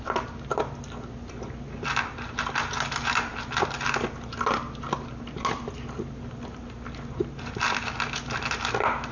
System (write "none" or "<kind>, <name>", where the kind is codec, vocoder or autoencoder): none